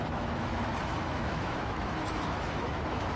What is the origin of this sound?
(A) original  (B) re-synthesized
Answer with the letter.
B